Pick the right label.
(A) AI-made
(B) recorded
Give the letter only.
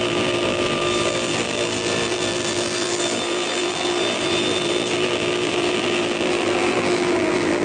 A